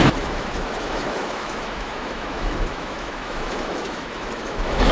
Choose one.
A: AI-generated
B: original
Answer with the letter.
A